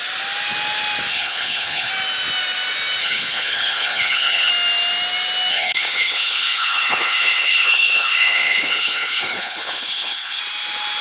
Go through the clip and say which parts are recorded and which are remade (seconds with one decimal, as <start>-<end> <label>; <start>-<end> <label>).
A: 0.0-1.1 recorded; 1.1-1.9 remade; 1.9-3.0 recorded; 3.0-4.5 remade; 4.5-5.5 recorded; 5.5-10.4 remade; 10.4-11.0 recorded